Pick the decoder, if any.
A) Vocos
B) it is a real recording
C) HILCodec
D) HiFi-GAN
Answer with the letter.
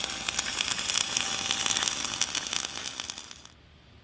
B